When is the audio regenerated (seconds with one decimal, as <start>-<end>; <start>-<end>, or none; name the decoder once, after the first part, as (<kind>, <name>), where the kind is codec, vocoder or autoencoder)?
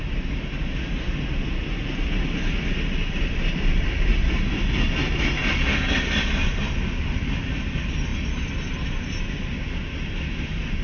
none